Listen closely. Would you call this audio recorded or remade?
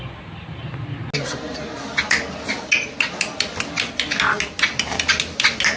recorded